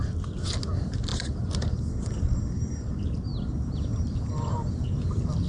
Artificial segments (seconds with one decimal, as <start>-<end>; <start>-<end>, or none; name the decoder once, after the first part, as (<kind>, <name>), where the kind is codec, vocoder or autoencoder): none